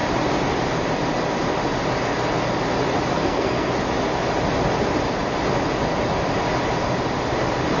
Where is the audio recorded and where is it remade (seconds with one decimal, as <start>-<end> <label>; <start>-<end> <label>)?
0.0-3.1 recorded; 3.1-3.7 remade; 3.7-7.8 recorded